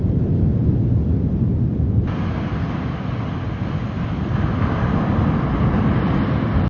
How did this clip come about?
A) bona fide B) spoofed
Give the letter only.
A